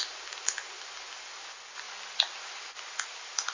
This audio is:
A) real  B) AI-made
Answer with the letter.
A